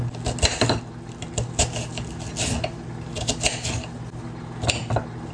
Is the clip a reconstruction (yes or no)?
no